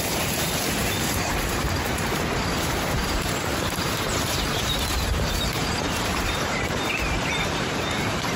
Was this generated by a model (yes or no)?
yes